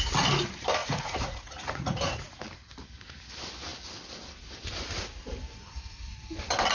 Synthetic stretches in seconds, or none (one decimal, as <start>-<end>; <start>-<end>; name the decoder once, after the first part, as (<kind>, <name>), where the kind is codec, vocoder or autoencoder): 0.8-2.4 (vocoder, Vocos)